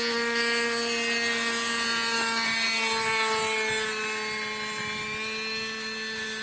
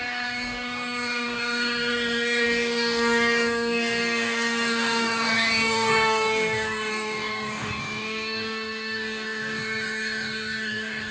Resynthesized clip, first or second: second